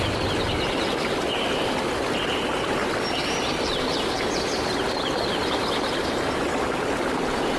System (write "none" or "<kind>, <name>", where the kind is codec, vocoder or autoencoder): none